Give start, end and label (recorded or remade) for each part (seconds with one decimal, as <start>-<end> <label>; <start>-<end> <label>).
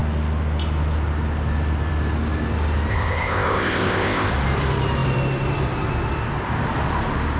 0.0-2.9 recorded; 2.9-4.3 remade; 4.3-7.4 recorded